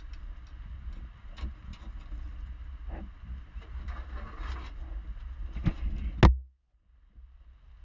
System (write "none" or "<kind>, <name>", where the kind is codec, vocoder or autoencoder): none